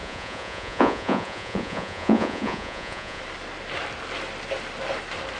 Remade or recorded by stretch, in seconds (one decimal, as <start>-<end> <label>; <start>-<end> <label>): 0.0-3.2 remade; 3.2-5.4 recorded